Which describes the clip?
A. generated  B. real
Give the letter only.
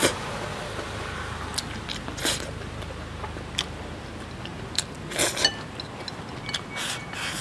B